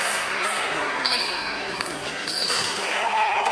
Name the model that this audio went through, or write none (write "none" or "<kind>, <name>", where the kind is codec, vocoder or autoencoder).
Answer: codec, SNAC